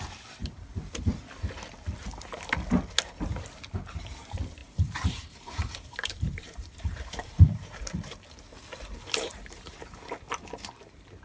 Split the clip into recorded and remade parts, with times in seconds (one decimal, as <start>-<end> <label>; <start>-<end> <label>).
0.0-4.6 recorded; 4.6-8.0 remade; 8.0-9.3 recorded; 9.3-9.9 remade; 9.9-11.2 recorded